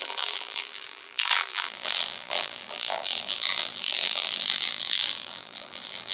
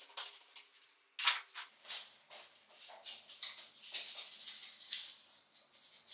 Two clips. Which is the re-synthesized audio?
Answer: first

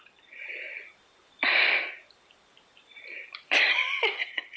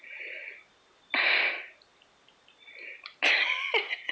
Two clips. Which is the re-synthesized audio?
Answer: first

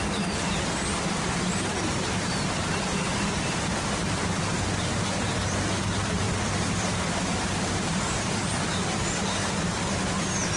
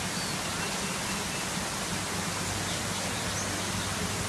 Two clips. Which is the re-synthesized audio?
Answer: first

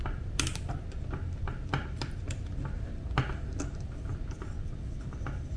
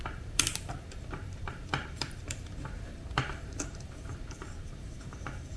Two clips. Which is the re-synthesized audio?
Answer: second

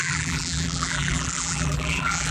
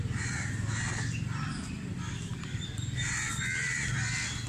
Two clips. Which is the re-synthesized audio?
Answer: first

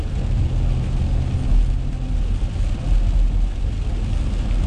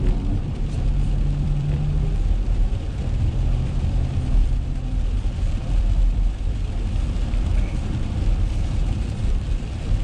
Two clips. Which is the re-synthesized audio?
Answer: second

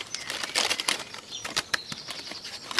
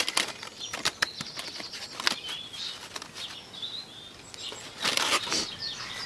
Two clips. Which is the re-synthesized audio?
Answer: first